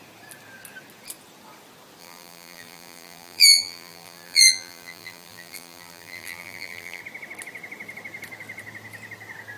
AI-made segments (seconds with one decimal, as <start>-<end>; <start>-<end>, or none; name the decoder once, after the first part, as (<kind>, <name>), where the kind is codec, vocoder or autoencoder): 2.0-7.0 (vocoder, BigVGAN v2)